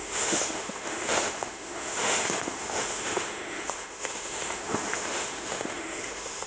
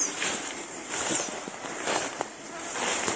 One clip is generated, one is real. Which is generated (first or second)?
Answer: first